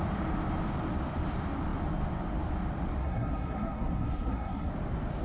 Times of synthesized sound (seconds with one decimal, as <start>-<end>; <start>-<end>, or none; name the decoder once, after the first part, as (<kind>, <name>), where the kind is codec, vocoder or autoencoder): 3.0-4.7 (codec, SNAC)